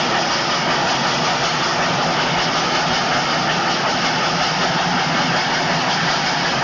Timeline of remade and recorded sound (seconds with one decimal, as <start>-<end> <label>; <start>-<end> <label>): 0.0-6.6 recorded